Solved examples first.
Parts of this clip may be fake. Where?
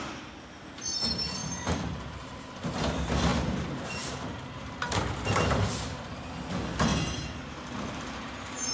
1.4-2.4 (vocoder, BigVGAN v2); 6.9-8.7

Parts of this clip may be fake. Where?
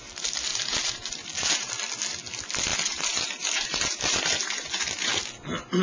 0.5-1.7 (vocoder, BigVGAN v2); 2.7-5.1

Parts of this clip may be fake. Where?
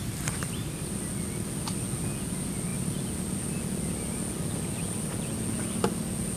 0.0-1.0 (vocoder, BigVGAN v2)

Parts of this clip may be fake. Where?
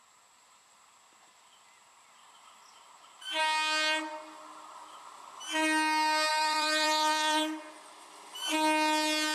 6.3-7.6 (vocoder, BigVGAN v2)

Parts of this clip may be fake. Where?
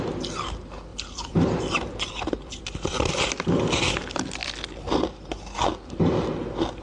0.9-3.7 (vocoder, BigVGAN v2)